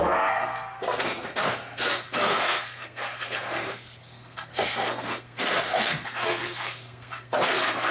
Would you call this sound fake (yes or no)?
yes